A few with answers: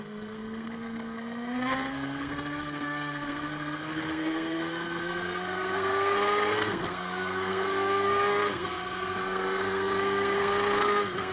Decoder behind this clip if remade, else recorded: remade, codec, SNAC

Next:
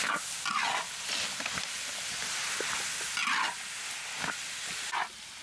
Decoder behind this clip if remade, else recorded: recorded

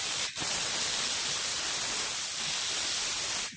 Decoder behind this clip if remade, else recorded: recorded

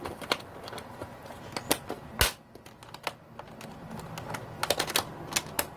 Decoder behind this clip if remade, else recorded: recorded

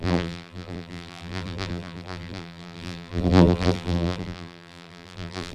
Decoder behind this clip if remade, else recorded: remade, vocoder, BigVGAN v2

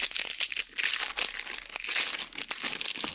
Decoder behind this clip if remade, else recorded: recorded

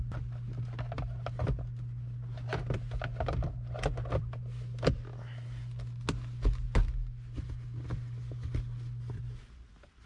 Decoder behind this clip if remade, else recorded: recorded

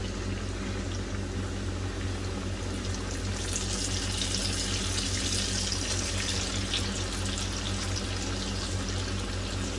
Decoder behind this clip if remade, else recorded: recorded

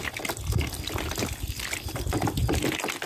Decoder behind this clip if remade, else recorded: recorded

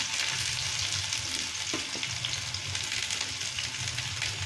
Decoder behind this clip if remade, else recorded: recorded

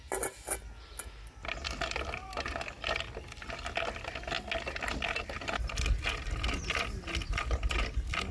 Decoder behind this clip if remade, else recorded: recorded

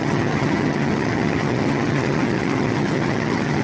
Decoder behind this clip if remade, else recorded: remade, vocoder, HiFi-GAN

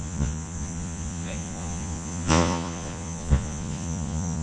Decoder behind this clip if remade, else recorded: remade, vocoder, Vocos